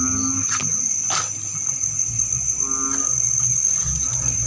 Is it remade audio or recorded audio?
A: recorded